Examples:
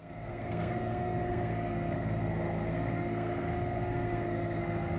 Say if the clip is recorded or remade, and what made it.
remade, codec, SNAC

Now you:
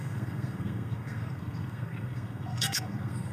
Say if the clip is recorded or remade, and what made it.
remade, codec, SNAC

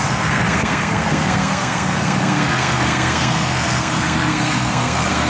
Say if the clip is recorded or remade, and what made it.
remade, codec, SNAC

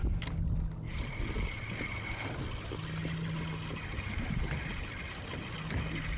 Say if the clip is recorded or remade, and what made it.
recorded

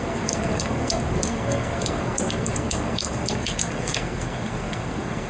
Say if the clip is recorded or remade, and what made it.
remade, codec, SNAC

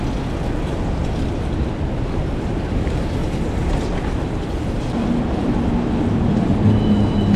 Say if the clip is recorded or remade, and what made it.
recorded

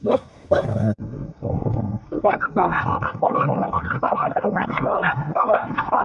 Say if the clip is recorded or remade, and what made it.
remade, codec, SNAC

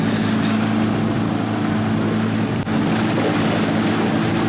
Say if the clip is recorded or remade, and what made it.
recorded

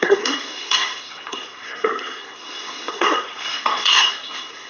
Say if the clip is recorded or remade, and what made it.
remade, codec, SNAC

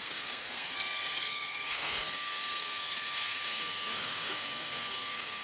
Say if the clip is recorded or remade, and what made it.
remade, codec, SNAC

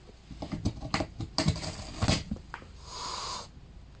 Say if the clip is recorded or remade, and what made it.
recorded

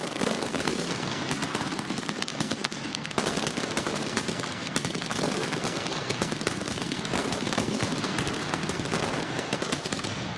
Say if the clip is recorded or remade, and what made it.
remade, codec, SNAC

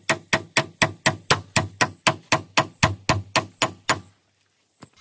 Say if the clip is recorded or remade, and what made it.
recorded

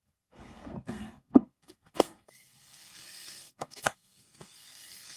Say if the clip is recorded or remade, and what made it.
remade, codec, SNAC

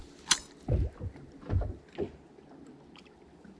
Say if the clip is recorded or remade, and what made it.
recorded